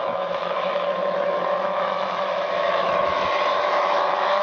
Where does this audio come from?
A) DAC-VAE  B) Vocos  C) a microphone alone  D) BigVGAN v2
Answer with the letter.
A